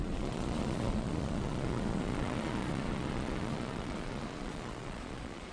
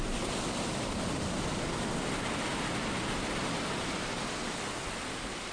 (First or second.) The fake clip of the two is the first